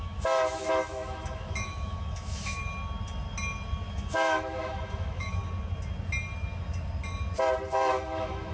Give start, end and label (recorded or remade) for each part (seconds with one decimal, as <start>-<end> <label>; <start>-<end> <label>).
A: 0.0-2.6 remade; 2.6-3.9 recorded; 3.9-5.4 remade; 5.4-7.7 recorded; 7.7-8.5 remade